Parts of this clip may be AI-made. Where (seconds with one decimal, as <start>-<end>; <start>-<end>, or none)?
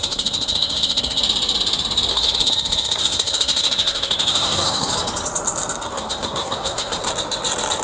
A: 0.0-1.2; 2.1-4.9; 5.9-7.1